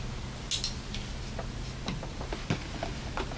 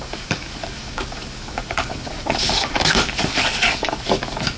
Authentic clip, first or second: first